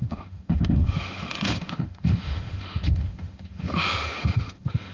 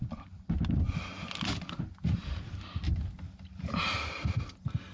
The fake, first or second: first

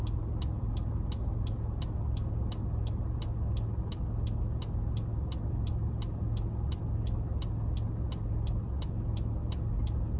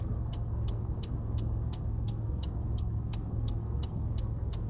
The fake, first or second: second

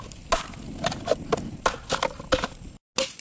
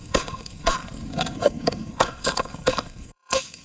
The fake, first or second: second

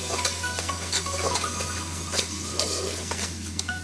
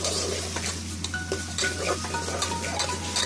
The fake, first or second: first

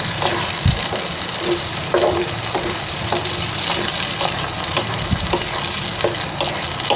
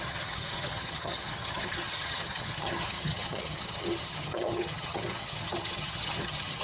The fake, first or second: second